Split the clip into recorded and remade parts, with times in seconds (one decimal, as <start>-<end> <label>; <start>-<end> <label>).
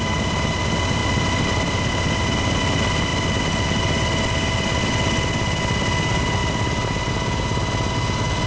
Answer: 0.0-1.0 recorded; 1.0-1.9 remade; 1.9-3.1 recorded; 3.1-3.8 remade; 3.8-6.4 recorded; 6.4-7.1 remade; 7.1-8.5 recorded